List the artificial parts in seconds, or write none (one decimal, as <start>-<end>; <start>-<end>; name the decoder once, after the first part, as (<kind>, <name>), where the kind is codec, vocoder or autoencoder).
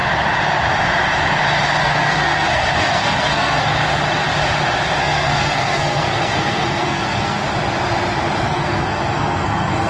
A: 1.8-3.7 (codec, SNAC); 5.0-7.4; 8.5-9.9